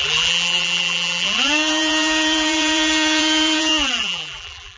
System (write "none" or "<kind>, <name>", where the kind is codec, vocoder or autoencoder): vocoder, BigVGAN v2